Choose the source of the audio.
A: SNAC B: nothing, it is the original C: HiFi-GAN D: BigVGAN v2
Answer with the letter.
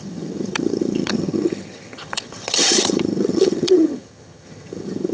C